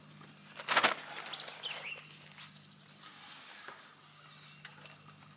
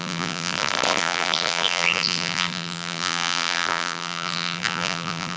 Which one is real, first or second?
first